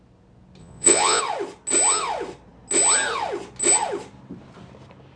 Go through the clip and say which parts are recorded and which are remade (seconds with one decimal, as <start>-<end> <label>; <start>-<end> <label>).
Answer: 0.0-0.6 recorded; 0.6-1.2 remade; 1.2-5.2 recorded